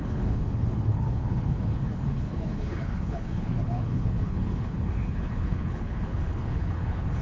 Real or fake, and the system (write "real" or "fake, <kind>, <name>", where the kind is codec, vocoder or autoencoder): fake, codec, HILCodec